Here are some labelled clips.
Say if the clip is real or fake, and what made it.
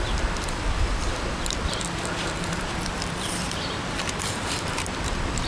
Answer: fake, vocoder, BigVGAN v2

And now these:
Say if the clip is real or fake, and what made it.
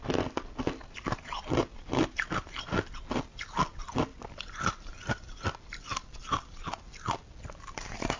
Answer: real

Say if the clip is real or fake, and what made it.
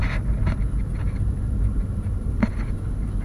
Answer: fake, vocoder, BigVGAN v2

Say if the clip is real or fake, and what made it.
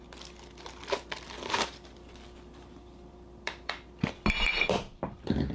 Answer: fake, vocoder, BigVGAN v2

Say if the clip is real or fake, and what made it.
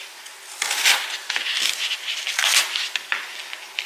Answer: real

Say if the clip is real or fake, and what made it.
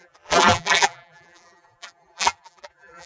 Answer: fake, vocoder, BigVGAN v2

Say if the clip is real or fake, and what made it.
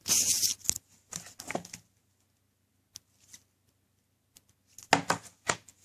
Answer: real